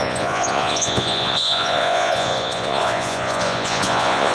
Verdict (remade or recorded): remade